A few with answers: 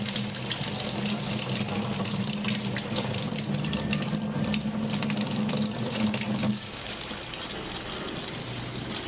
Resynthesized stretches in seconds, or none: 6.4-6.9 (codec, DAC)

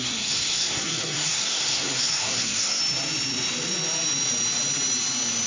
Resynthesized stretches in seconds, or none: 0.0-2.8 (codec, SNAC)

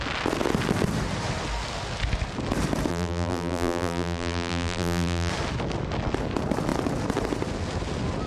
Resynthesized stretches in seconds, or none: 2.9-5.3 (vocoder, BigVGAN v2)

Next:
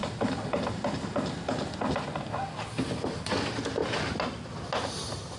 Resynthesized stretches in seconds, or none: none